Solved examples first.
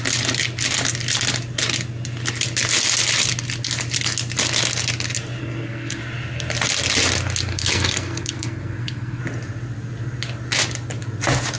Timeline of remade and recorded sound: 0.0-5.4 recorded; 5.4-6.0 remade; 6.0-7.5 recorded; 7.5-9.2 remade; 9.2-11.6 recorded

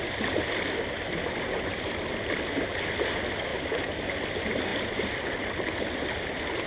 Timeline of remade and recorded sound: 0.0-3.5 recorded; 3.5-4.2 remade; 4.2-6.7 recorded

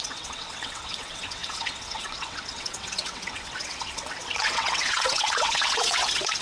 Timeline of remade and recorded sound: 0.0-6.4 remade